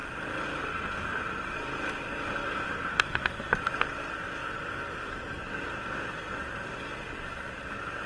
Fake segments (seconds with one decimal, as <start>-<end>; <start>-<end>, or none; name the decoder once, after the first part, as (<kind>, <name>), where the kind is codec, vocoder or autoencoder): 2.4-3.2 (vocoder, BigVGAN v2); 4.4-5.4